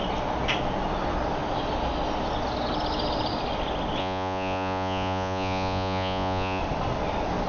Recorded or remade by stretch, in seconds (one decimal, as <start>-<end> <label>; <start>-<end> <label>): 0.0-4.0 recorded; 4.0-6.6 remade; 6.6-7.5 recorded